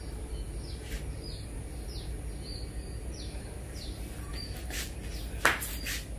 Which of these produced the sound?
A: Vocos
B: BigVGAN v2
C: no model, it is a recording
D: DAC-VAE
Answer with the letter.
C